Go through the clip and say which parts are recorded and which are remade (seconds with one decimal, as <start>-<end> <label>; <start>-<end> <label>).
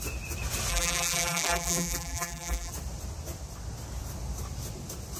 0.0-0.7 recorded; 0.7-2.7 remade; 2.7-5.2 recorded